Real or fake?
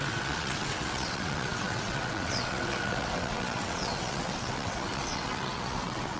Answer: fake